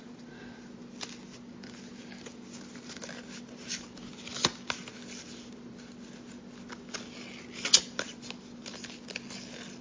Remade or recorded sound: recorded